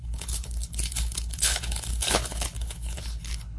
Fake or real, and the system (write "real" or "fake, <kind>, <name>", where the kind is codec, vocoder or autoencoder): fake, codec, HILCodec